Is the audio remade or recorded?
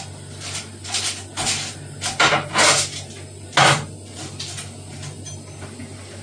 recorded